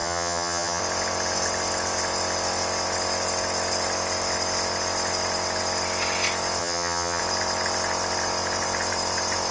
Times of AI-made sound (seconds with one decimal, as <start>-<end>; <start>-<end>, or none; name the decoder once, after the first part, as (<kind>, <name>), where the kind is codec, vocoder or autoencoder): 0.0-0.8 (vocoder, HiFi-GAN); 6.6-7.2